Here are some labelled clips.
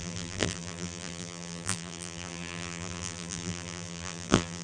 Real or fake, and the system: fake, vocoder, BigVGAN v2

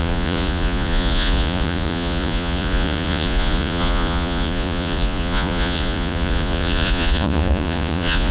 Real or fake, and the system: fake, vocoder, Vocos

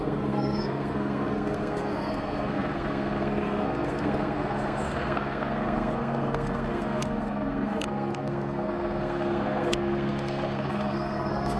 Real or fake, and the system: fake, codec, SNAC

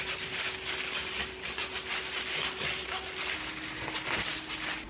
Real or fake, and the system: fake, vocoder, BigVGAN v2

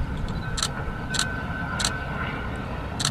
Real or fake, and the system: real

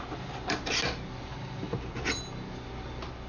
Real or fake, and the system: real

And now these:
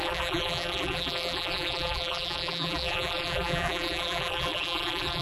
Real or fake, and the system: fake, vocoder, BigVGAN v2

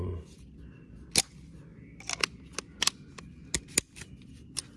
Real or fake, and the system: real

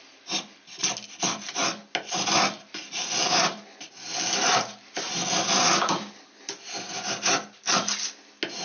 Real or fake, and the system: real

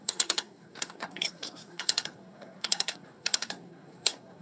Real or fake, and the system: fake, codec, SNAC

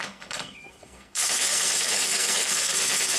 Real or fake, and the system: fake, codec, SNAC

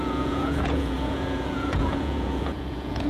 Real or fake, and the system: fake, vocoder, Vocos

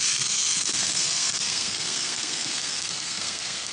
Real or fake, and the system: fake, codec, SNAC